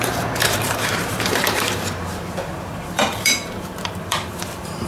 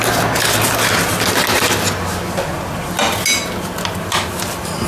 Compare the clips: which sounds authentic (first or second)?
second